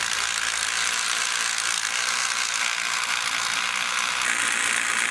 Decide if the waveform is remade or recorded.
recorded